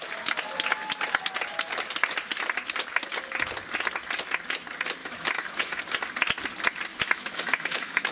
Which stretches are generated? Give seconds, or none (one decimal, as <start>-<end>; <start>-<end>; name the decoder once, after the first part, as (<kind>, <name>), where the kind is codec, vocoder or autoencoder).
5.0-5.8 (autoencoder, DAC-VAE); 6.9-8.1